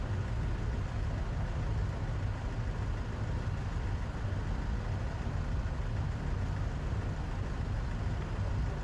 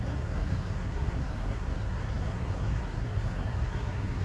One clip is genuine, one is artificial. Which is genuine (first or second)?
first